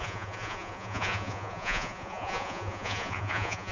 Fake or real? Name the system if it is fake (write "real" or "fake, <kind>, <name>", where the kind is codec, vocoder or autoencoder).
fake, vocoder, Vocos